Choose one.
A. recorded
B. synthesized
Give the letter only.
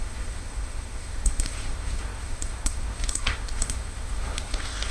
B